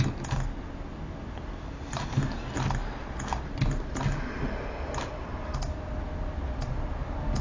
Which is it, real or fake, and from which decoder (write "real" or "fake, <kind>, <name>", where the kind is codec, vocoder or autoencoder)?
real